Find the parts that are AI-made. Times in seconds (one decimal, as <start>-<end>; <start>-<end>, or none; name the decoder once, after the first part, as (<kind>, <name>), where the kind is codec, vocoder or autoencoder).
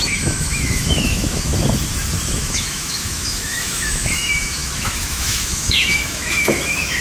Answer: 0.0-1.5 (autoencoder, DAC-VAE); 2.3-7.0